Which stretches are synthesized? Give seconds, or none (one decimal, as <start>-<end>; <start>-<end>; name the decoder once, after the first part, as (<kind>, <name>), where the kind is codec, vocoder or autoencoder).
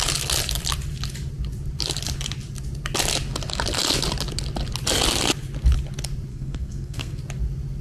6.3-7.2 (codec, SNAC)